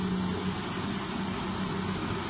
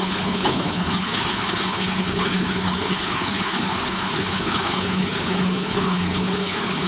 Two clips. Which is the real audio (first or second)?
first